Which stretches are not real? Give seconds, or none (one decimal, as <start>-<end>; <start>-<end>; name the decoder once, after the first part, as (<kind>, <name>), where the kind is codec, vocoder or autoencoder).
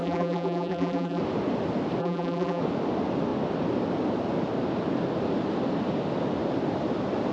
0.0-1.2 (vocoder, BigVGAN v2); 2.0-2.6